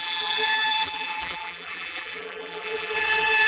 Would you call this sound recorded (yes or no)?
no